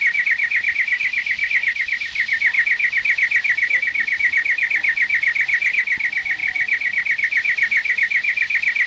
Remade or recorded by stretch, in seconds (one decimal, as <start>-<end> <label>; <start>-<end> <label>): 0.0-8.9 recorded